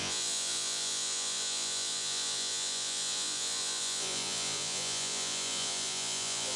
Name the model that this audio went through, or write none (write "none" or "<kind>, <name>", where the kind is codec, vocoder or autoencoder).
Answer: vocoder, Vocos